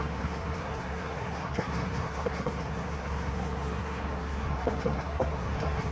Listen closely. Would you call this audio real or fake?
fake